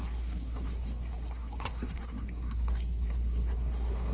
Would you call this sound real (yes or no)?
no